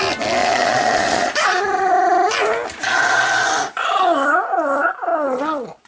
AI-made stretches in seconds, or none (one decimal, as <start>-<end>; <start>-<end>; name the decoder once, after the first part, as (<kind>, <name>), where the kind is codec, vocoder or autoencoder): 0.4-1.9 (vocoder, Vocos); 5.1-5.9